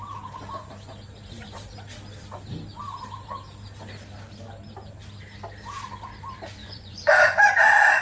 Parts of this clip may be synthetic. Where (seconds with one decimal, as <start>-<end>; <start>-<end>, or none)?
6.6-7.5